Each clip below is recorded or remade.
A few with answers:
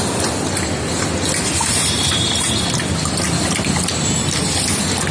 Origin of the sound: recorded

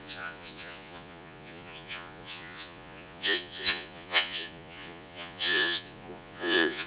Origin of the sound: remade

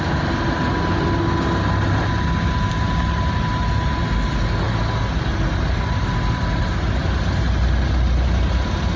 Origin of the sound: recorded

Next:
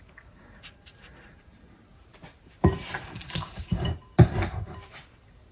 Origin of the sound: remade